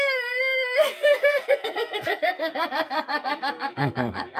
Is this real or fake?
fake